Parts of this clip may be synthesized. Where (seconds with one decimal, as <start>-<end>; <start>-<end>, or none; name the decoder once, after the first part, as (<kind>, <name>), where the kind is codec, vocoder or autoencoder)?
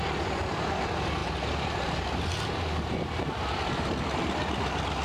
none